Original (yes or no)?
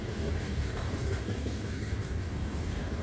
no